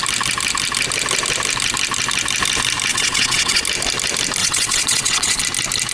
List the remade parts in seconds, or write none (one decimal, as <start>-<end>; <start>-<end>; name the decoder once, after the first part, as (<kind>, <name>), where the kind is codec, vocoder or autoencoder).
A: 2.9-3.6 (vocoder, WaveNeXt); 4.4-5.4